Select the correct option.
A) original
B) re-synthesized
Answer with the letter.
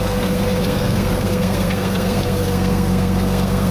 B